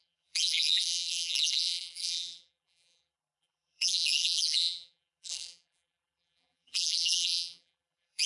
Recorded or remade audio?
remade